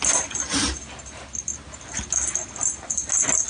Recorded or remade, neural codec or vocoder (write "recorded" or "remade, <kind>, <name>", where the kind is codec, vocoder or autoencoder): recorded